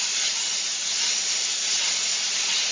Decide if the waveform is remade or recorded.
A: recorded